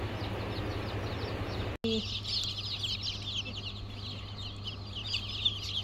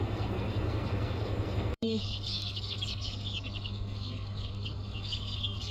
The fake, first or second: second